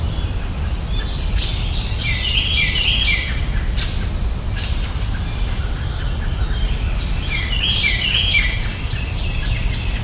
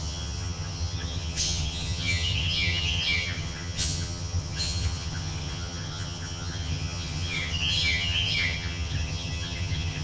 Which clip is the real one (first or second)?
first